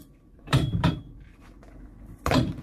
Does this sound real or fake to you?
fake